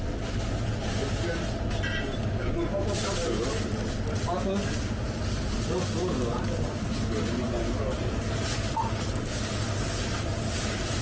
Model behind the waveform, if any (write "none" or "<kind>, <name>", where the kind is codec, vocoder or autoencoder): none